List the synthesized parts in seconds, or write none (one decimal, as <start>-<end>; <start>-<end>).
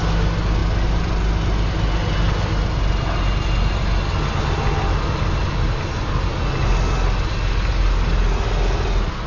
none